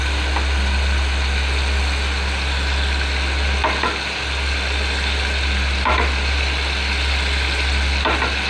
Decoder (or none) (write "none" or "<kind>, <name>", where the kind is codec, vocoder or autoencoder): none